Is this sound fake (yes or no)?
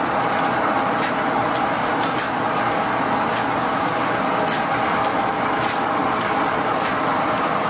no